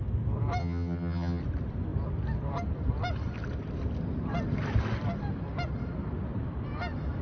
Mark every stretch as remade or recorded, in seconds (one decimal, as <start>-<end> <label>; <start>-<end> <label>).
0.0-0.6 recorded; 0.6-1.4 remade; 1.4-7.2 recorded